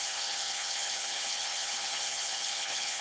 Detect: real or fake fake